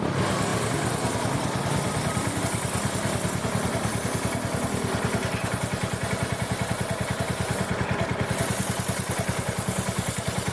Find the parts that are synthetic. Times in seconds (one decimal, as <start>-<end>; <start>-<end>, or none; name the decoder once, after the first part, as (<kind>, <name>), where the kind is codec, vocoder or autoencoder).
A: none